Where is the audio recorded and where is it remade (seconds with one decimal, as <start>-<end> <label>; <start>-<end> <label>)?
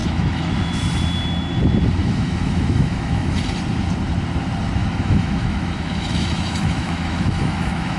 0.0-0.8 remade; 0.8-2.0 recorded; 2.0-3.4 remade; 3.4-4.8 recorded; 4.8-8.0 remade